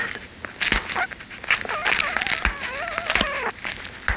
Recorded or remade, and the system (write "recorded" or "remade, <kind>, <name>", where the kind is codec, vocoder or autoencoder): recorded